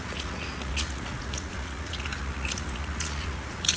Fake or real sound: fake